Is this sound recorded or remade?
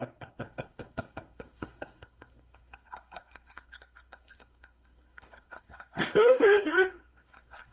remade